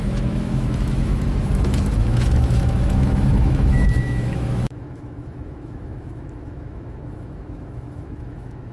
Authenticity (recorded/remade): remade